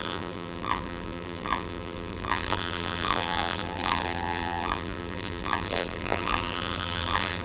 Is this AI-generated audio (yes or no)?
yes